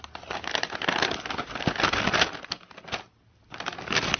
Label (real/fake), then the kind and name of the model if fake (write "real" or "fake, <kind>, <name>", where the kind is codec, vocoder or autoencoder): real